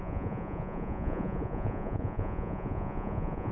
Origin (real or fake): fake